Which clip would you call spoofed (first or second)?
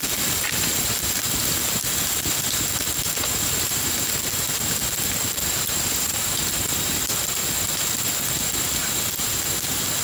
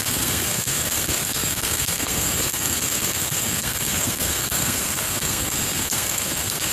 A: second